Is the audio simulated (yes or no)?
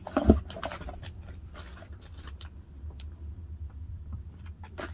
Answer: yes